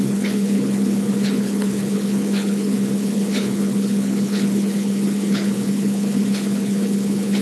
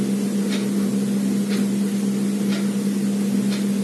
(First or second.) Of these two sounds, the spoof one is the first